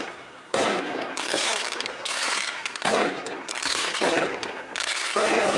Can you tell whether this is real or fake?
fake